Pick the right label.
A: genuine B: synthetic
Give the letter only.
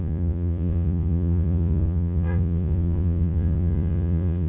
B